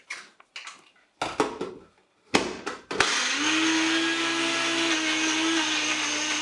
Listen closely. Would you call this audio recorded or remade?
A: recorded